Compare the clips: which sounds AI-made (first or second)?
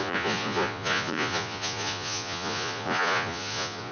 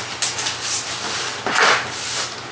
first